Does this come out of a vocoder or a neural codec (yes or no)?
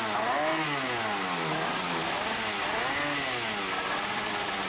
no